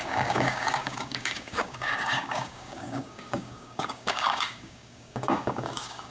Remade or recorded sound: remade